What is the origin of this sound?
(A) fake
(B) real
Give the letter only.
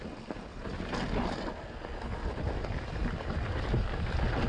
B